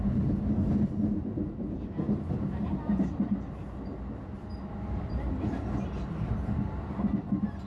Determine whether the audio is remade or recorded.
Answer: recorded